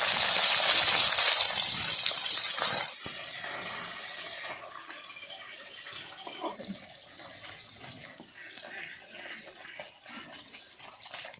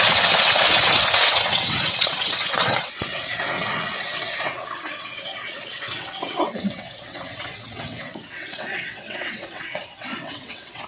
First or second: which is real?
first